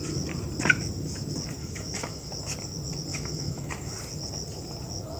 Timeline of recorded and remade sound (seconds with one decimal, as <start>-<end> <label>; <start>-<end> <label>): 0.0-1.6 recorded; 1.6-2.3 remade; 2.3-3.1 recorded; 3.1-3.7 remade; 3.7-5.2 recorded